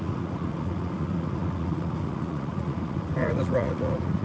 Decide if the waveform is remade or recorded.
remade